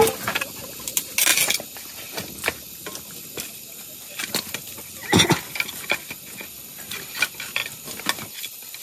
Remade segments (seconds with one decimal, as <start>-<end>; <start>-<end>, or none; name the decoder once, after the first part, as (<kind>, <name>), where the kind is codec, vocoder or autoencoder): none